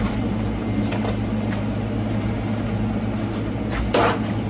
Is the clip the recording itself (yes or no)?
yes